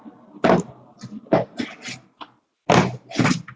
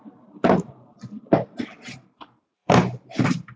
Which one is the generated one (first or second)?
second